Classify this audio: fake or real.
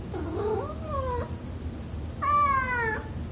real